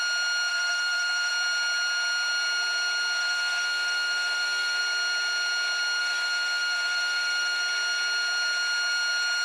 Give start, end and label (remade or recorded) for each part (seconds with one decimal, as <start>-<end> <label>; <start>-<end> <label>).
0.0-0.5 recorded; 0.5-1.3 remade; 1.3-3.2 recorded; 3.2-4.8 remade; 4.8-6.0 recorded; 6.0-7.6 remade; 7.6-9.4 recorded